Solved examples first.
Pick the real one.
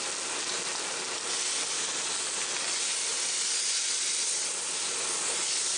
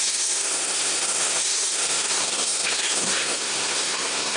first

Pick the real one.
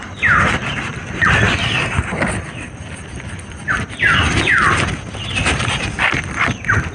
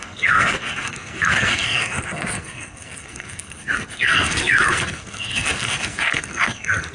first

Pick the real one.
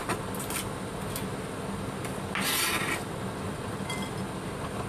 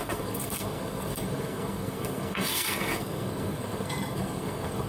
first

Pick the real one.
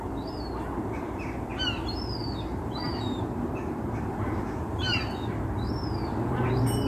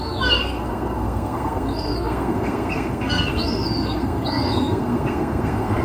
first